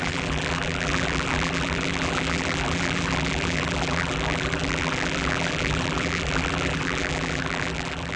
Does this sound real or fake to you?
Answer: fake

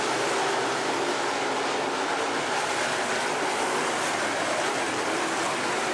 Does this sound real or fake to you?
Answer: real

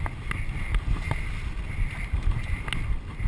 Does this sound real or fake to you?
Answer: real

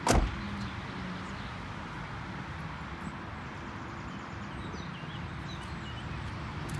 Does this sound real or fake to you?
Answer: real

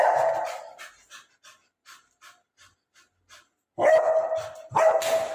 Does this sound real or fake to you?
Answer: real